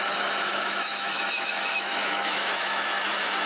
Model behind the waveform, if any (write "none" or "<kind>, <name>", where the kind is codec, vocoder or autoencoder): autoencoder, DAC-VAE